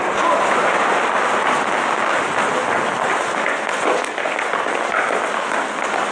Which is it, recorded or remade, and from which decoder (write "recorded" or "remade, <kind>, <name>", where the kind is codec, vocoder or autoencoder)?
recorded